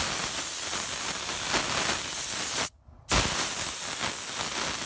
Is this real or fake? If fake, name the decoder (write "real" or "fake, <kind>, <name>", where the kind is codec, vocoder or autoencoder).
real